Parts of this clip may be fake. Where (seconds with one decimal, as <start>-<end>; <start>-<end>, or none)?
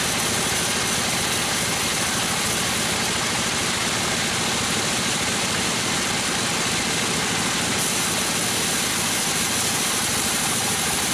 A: 1.9-6.7; 10.1-11.1